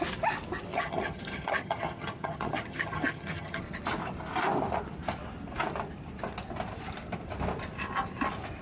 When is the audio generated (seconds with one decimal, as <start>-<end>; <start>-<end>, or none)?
0.7-3.6

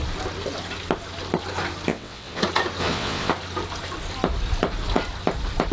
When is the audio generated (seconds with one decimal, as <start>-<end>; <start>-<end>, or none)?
1.9-2.4; 2.8-3.3